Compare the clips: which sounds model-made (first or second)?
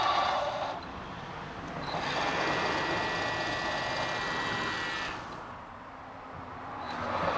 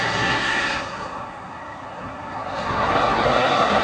second